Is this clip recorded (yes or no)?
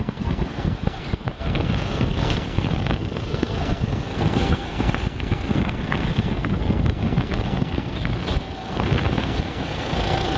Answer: no